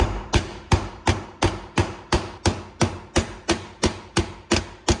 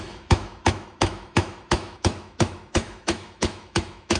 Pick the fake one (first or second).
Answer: second